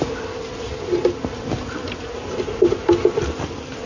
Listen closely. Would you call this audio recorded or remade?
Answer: recorded